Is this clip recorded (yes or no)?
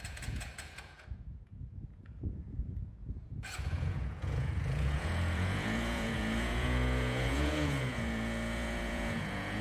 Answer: no